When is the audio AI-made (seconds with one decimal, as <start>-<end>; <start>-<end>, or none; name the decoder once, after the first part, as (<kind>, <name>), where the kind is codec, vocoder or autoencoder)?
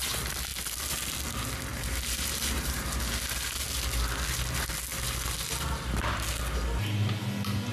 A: 1.7-3.0 (vocoder, BigVGAN v2)